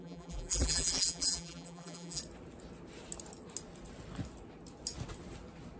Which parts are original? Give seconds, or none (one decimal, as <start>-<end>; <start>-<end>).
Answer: 2.2-5.8